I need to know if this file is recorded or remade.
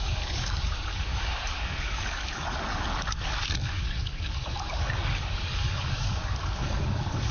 remade